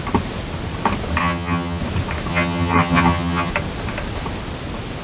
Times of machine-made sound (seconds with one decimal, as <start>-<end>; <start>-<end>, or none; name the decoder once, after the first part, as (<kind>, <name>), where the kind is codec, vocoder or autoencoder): 1.2-1.8 (vocoder, HiFi-GAN); 2.3-3.5

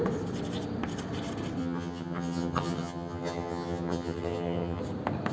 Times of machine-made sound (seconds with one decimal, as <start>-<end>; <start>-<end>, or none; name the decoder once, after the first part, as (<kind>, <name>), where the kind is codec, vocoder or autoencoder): 1.6-4.8 (vocoder, HiFi-GAN)

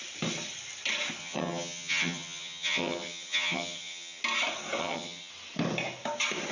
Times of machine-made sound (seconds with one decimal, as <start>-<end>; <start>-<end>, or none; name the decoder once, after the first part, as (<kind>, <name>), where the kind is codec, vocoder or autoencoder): 1.2-4.2 (vocoder, HiFi-GAN); 4.8-5.3